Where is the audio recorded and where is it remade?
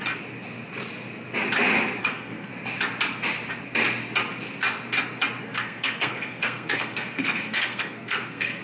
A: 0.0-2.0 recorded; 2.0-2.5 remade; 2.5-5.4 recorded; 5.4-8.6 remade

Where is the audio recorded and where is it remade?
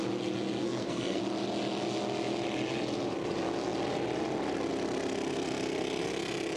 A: 0.0-0.6 recorded; 0.6-1.2 remade; 1.2-6.6 recorded